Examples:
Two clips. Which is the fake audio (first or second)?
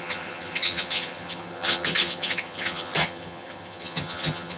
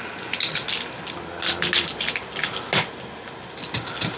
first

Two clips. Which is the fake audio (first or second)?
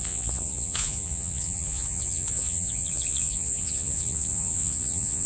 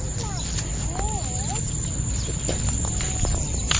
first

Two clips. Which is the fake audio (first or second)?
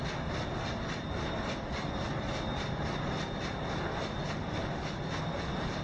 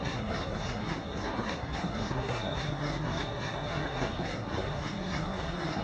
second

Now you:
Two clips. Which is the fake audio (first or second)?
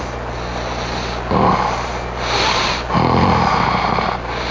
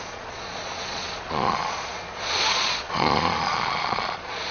second